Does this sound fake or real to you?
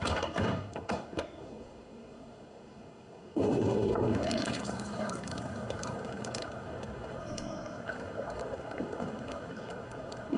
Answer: fake